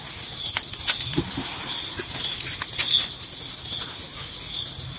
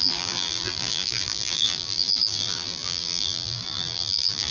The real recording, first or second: first